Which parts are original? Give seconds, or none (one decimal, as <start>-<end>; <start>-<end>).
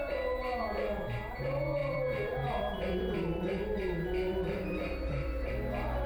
0.0-1.8; 5.5-6.1